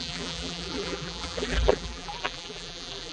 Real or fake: fake